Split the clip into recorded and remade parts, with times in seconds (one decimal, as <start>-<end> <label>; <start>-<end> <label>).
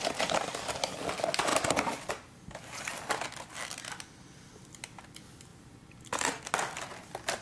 0.0-5.5 recorded; 5.5-6.4 remade; 6.4-7.4 recorded